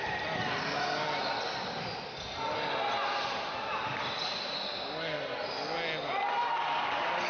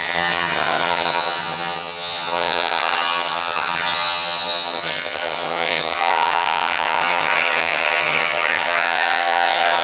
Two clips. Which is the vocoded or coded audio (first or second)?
second